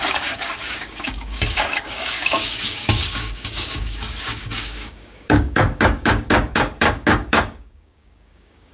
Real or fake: fake